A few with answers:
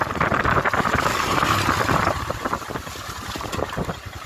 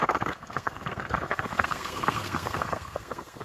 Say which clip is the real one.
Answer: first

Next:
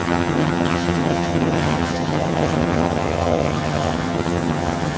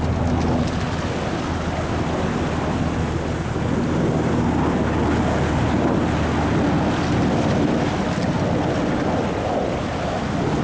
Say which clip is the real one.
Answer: second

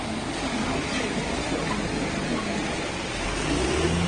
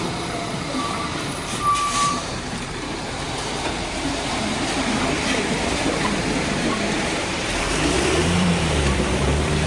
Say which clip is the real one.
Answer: first